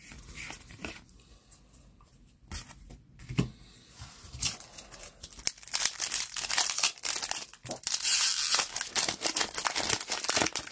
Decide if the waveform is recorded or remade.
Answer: recorded